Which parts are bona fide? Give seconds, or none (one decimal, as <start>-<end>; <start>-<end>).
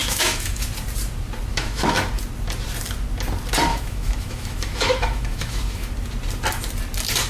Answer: 0.7-1.5; 2.0-3.7; 5.9-7.3